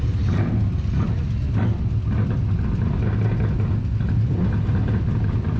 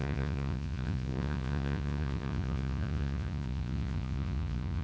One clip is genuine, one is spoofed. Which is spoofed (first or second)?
second